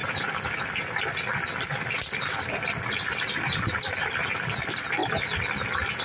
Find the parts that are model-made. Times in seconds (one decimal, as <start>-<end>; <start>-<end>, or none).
none